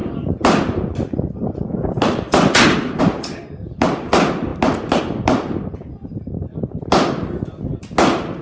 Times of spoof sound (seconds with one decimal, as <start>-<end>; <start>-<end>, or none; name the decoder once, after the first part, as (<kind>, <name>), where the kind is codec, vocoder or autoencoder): none